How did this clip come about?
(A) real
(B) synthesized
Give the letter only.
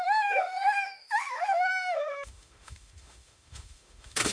B